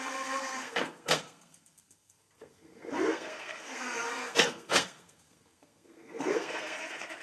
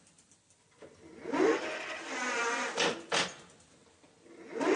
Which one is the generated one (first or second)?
first